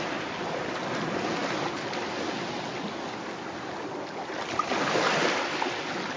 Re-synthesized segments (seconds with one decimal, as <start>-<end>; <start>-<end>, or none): none